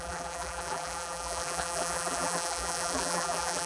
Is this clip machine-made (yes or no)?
yes